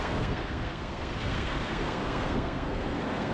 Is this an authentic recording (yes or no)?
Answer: no